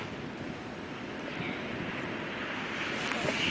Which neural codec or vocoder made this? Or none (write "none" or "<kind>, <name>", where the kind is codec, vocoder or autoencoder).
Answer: none